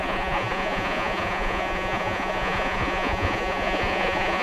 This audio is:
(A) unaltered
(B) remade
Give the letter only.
B